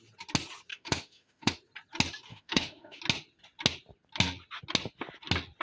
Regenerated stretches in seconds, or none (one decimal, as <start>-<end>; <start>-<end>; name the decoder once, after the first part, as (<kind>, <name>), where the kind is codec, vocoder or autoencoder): 0.7-1.5 (autoencoder, DAC-VAE); 2.3-3.0